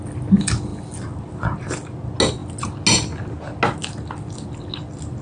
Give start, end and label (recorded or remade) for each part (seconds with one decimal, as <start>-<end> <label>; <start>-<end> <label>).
0.0-5.2 recorded